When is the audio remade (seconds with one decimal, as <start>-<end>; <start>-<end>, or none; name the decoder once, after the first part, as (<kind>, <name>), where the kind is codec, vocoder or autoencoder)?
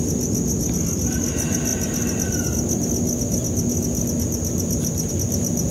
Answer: none